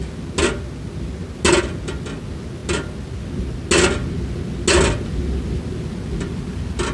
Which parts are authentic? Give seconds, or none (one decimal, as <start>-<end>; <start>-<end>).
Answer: 0.0-6.9